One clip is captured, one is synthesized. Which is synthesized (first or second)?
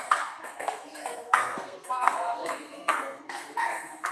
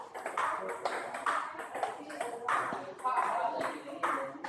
first